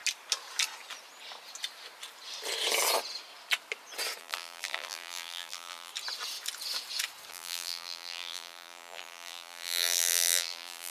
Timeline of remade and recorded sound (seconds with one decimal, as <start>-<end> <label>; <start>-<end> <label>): 0.0-4.2 recorded; 4.2-5.9 remade; 5.9-7.3 recorded; 7.3-10.9 remade